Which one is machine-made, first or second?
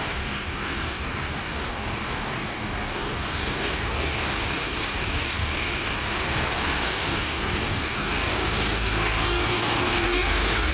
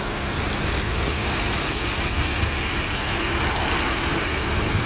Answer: first